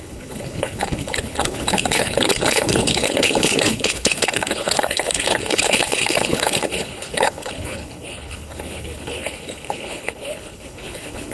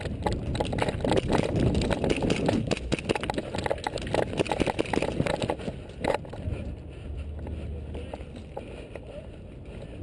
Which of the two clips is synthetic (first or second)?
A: first